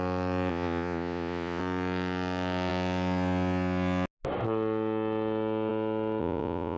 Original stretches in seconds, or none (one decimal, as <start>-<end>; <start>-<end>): 0.0-0.5; 1.6-6.2